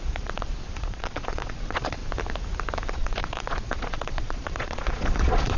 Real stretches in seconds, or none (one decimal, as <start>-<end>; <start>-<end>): 2.0-2.9